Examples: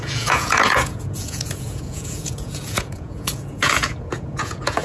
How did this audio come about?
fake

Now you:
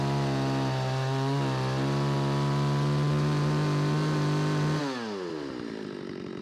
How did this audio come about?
real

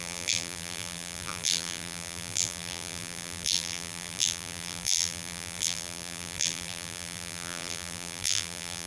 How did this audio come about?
fake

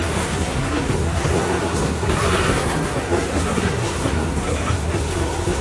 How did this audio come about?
fake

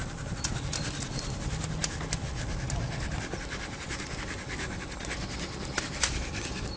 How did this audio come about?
real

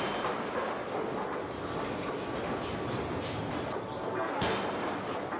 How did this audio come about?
real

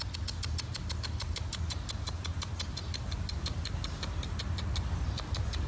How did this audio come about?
real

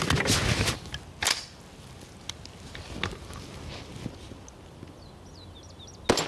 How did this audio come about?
real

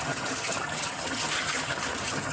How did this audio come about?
fake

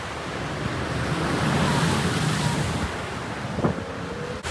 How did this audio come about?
real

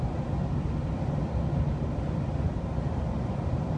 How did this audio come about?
real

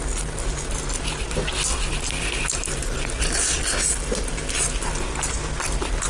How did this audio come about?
real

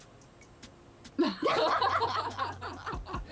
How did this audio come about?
real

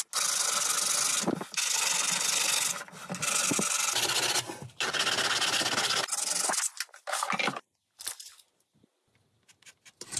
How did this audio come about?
real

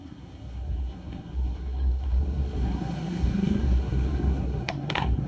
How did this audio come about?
fake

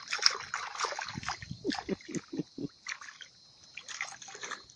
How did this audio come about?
real